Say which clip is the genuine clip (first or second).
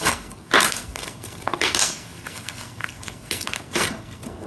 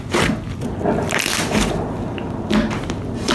second